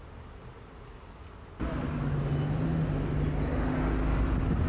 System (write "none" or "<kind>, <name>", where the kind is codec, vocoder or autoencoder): none